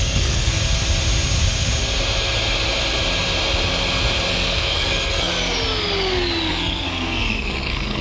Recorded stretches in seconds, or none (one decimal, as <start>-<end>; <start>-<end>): 0.5-4.3; 5.3-6.5